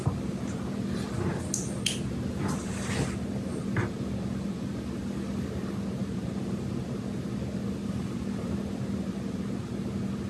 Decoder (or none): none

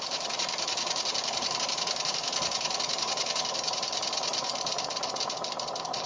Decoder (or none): vocoder, BigVGAN v2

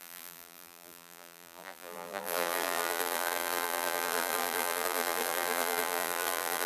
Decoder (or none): vocoder, BigVGAN v2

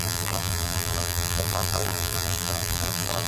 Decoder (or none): vocoder, BigVGAN v2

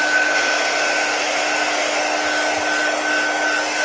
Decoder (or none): none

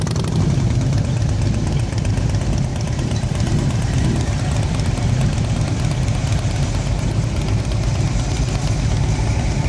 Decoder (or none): none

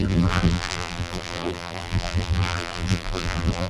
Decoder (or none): vocoder, BigVGAN v2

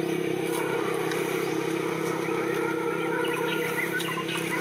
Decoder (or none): none